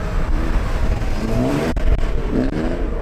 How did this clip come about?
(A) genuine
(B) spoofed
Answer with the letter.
B